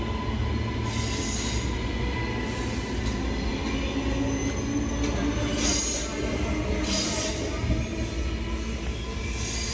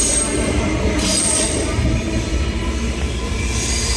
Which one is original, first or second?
first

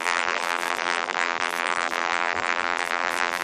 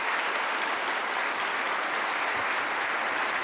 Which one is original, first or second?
second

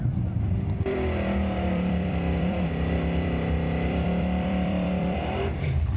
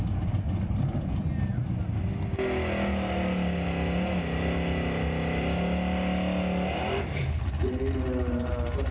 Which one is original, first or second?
second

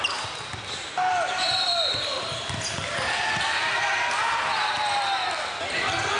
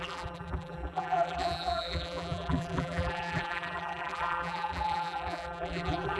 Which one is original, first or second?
first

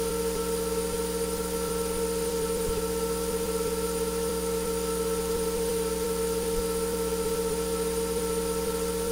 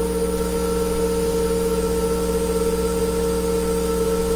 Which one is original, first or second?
second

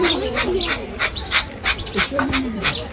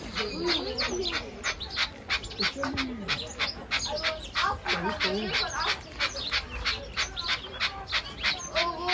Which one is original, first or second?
second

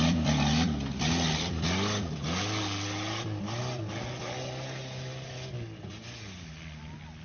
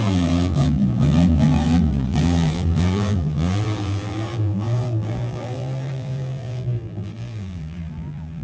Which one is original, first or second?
first